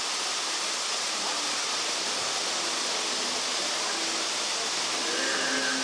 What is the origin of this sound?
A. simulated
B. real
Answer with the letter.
B